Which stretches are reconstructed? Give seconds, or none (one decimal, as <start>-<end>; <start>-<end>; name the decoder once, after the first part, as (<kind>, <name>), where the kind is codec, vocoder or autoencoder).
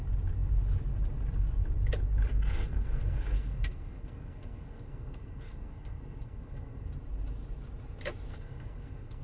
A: 2.3-6.9 (codec, SNAC); 8.3-9.2